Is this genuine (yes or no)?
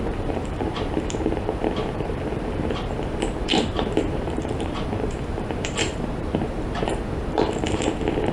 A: no